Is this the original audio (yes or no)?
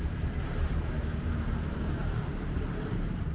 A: no